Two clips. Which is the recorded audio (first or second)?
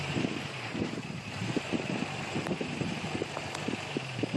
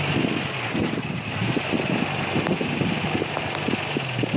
second